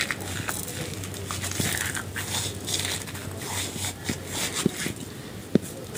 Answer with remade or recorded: recorded